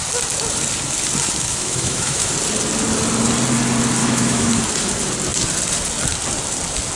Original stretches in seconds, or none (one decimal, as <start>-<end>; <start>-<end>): 0.0-1.5; 2.3-4.0; 4.5-7.0

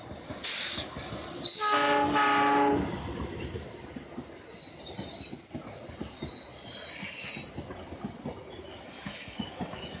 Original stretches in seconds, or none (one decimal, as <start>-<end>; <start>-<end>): 0.0-8.7

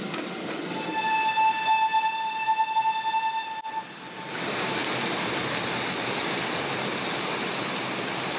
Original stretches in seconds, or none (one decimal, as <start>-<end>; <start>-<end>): 0.0-8.4

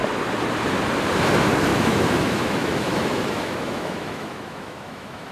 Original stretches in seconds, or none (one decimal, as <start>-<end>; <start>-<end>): 0.0-1.7

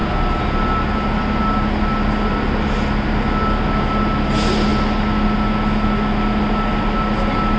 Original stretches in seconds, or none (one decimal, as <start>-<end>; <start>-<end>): 0.0-7.6

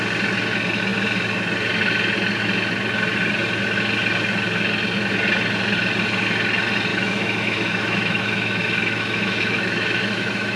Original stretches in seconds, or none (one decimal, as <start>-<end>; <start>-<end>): 0.0-6.9

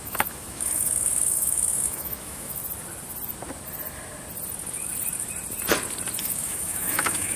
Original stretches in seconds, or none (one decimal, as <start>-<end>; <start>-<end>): 2.6-6.2